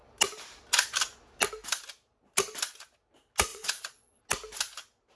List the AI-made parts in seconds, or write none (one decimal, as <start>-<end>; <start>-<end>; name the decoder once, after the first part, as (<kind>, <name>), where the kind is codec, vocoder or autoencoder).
3.5-4.2 (vocoder, Vocos)

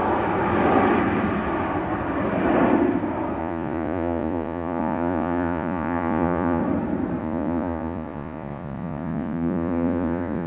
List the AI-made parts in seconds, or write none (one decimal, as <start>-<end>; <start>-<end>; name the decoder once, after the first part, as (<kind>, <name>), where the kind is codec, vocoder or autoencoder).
3.4-6.6 (vocoder, Vocos); 7.2-10.5